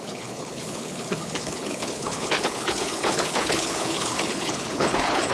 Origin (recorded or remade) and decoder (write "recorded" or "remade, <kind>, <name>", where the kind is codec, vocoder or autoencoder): remade, codec, HILCodec